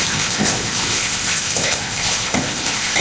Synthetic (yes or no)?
yes